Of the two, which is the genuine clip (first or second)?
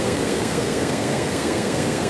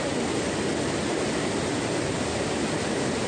second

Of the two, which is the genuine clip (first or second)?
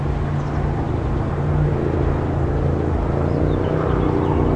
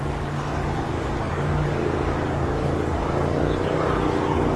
first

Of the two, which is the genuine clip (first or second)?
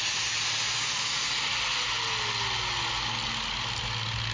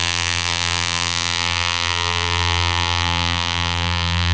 first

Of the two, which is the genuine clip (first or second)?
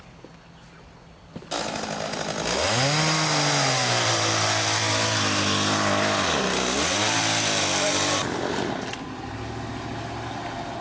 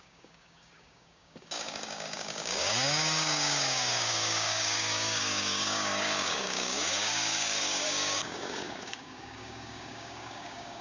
first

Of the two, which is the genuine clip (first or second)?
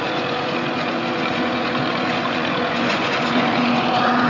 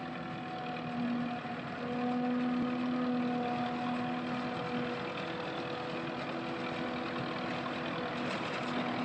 second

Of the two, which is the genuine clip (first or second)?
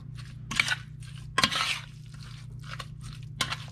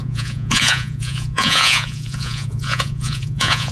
first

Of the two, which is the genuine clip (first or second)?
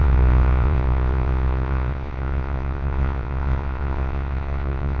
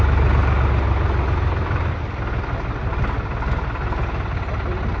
second